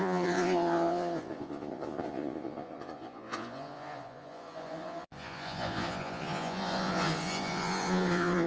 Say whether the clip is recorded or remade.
remade